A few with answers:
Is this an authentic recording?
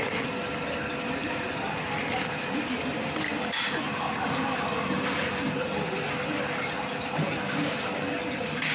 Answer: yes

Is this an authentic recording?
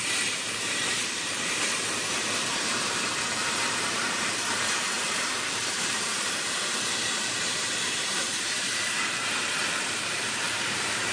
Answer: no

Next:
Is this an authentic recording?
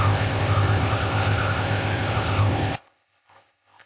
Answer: no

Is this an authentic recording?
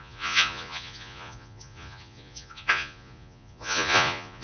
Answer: no